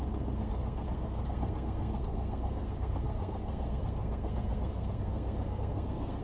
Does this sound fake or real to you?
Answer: fake